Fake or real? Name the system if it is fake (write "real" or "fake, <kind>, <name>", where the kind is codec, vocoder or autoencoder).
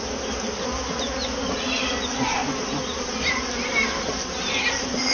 real